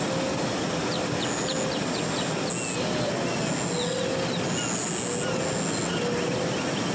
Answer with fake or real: real